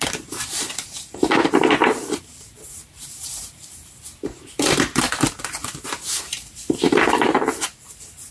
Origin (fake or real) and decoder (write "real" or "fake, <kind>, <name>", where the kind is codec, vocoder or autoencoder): fake, vocoder, BigVGAN v2